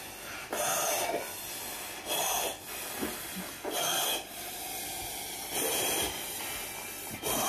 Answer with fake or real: real